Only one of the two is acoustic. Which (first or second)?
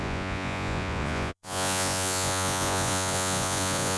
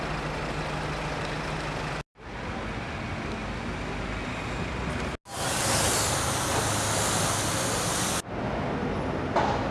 second